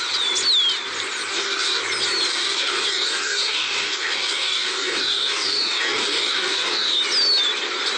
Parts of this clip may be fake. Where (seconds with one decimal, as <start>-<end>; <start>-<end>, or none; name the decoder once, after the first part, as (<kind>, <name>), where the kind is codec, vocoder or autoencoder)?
1.3-1.8 (codec, DAC); 2.3-7.0